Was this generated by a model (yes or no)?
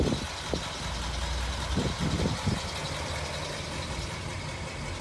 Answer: no